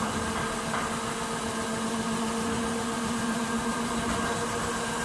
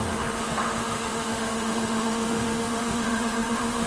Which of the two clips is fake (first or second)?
second